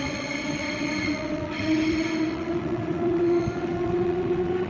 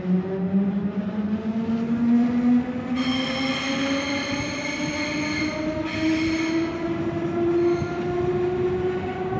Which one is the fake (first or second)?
first